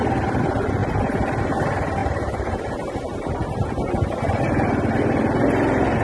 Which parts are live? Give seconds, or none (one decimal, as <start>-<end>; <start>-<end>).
0.0-2.0; 2.6-6.0